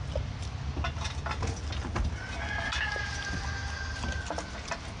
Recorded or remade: recorded